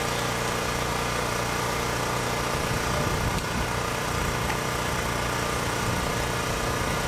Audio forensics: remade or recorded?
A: recorded